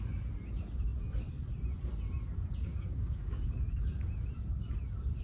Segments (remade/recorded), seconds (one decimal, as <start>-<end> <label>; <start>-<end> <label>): 0.0-2.7 recorded; 2.7-3.4 remade; 3.4-5.2 recorded